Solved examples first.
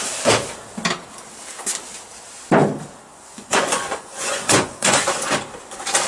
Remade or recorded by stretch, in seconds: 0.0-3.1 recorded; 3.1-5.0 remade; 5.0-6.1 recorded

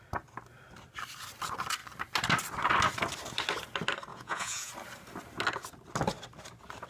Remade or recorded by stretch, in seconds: 0.0-4.1 recorded; 4.1-4.7 remade; 4.7-6.9 recorded

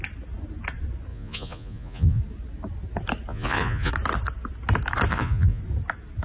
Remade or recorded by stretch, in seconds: 0.0-1.1 recorded; 1.1-2.2 remade; 2.2-3.3 recorded; 3.3-3.9 remade; 3.9-5.1 recorded; 5.1-5.6 remade; 5.6-6.2 recorded

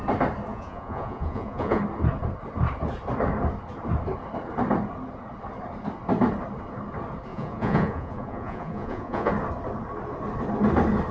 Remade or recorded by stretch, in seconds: 0.0-0.5 recorded; 0.5-1.8 remade; 1.8-7.3 recorded; 7.3-9.3 remade; 9.3-11.1 recorded

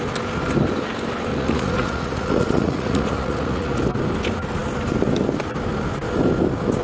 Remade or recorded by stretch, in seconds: 0.0-1.3 recorded; 1.3-3.8 remade; 3.8-6.8 recorded